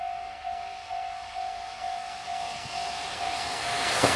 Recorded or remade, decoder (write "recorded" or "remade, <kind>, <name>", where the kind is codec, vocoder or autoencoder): remade, codec, SNAC